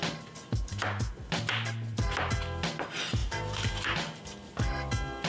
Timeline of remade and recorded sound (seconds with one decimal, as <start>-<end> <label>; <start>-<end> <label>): 0.0-3.2 recorded; 3.2-4.2 remade; 4.2-5.3 recorded